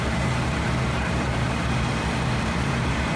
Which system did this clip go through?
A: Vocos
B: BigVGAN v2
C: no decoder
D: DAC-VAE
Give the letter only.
B